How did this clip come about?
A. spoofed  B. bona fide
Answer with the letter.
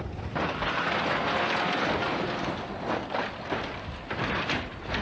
B